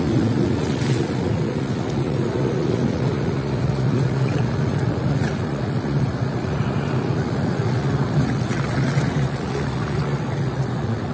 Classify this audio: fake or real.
fake